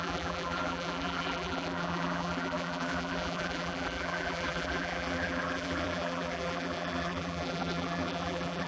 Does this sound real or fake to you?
fake